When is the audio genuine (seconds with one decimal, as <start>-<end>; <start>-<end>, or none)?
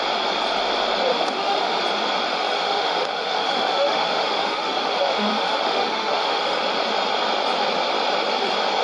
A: 0.0-1.1; 1.8-2.3; 6.6-8.8